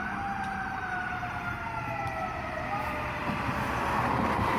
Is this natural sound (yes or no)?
no